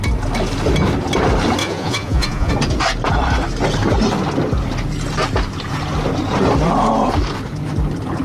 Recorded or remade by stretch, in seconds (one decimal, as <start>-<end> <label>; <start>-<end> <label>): 0.0-1.6 recorded; 1.6-2.5 remade; 2.5-8.2 recorded